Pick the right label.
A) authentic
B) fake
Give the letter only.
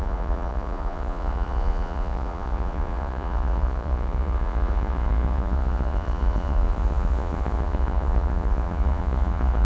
B